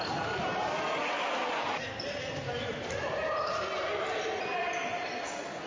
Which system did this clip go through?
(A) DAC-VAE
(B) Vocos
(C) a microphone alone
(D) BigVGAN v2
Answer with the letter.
C